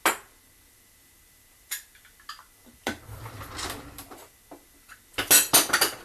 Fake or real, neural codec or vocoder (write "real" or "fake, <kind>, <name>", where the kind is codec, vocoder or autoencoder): real